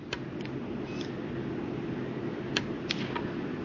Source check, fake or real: real